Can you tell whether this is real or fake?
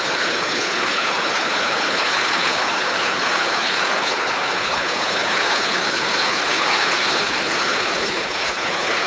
fake